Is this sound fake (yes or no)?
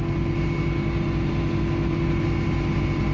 no